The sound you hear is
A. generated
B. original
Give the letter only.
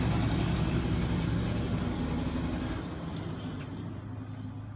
B